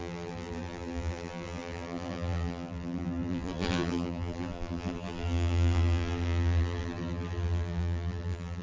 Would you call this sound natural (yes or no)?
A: no